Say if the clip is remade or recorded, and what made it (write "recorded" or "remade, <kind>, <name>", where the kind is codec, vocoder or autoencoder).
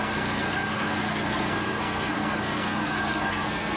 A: remade, codec, SNAC